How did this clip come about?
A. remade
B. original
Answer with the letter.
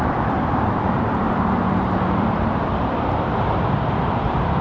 A